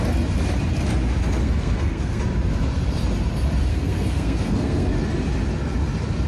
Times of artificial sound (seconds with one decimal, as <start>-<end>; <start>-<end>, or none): 1.4-2.2; 3.7-5.0